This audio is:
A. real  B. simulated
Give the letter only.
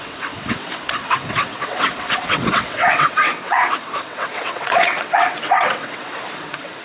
B